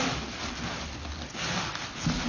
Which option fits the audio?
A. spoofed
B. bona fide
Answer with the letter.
B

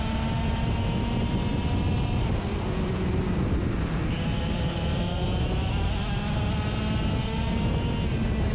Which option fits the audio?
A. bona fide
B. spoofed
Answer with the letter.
A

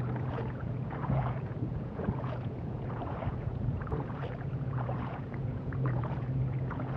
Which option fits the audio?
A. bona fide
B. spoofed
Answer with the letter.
B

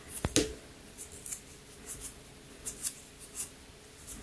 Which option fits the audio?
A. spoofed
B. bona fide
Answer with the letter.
B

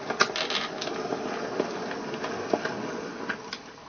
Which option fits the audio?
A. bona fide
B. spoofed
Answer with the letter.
A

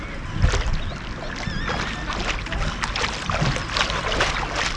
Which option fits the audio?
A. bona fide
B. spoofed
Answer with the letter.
A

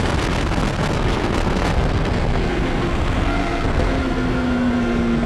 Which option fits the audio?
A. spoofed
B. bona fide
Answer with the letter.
A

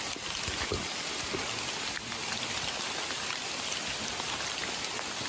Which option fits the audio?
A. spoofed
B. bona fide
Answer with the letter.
B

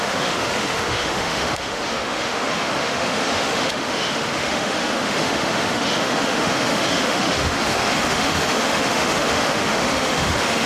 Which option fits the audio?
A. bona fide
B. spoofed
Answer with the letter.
B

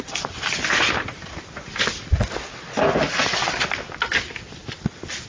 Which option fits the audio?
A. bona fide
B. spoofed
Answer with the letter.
A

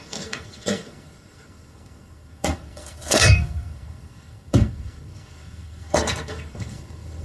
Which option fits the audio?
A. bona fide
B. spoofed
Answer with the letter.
B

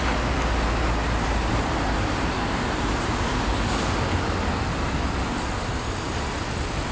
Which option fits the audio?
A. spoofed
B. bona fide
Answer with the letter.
B